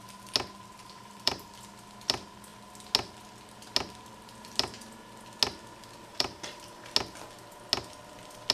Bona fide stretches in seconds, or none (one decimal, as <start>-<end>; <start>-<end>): 0.0-0.8; 1.5-6.1; 6.9-8.5